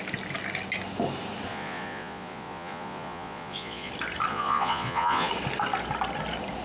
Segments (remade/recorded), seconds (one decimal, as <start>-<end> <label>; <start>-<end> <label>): 0.0-1.5 recorded; 1.5-3.9 remade; 3.9-4.3 recorded; 4.3-5.3 remade; 5.3-6.6 recorded